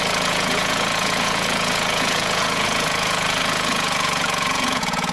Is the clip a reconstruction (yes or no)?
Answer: yes